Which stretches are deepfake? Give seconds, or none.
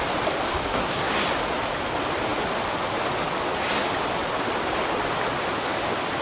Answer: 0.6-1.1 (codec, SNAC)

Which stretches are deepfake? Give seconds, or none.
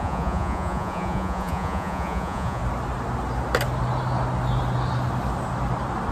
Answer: 0.0-2.6 (vocoder, Vocos)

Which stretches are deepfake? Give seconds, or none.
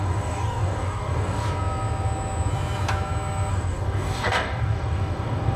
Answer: 0.0-1.4 (codec, DAC); 3.5-5.6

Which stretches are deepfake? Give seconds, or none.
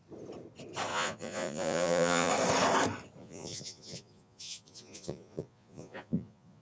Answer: 0.9-2.3 (vocoder, Vocos); 3.2-6.6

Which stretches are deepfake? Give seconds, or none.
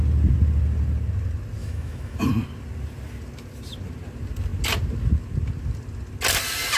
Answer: 1.6-2.3 (autoencoder, DAC-VAE)